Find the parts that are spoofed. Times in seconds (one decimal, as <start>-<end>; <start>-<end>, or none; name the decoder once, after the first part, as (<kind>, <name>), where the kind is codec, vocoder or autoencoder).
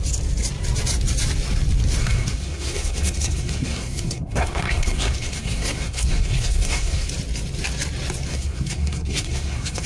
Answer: 2.0-7.1 (codec, SNAC); 8.3-9.9